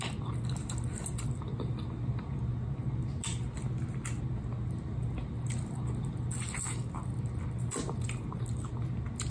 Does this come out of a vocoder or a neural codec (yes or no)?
no